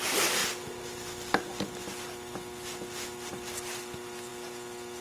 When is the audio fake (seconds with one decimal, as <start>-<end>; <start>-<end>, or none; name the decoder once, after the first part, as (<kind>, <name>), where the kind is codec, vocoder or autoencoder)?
none